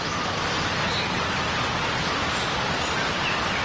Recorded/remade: recorded